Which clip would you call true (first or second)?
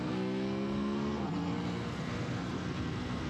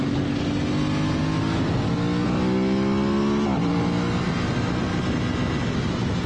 second